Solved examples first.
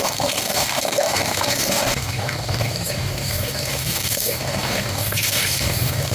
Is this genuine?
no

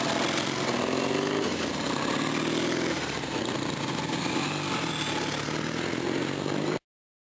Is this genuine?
no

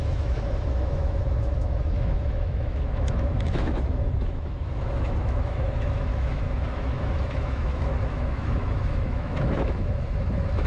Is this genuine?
no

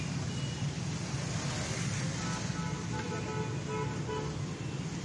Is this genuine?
yes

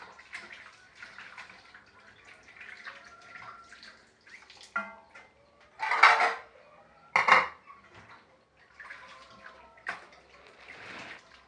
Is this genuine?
yes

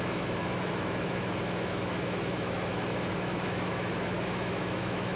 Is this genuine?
no